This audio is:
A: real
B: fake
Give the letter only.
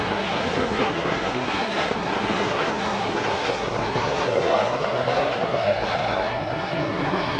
B